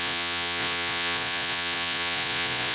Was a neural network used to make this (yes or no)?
yes